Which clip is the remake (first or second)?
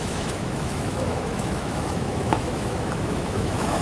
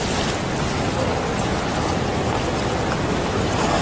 first